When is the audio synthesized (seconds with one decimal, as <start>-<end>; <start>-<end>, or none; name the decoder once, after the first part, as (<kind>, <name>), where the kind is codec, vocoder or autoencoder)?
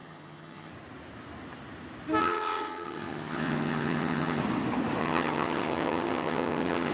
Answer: 0.0-0.7 (vocoder, HiFi-GAN); 2.2-4.4; 5.0-6.9